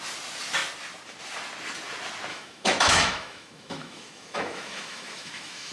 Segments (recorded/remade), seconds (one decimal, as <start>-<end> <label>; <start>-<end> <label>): 0.0-2.3 recorded; 2.3-5.7 remade